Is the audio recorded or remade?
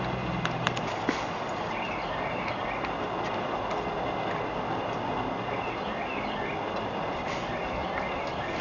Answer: recorded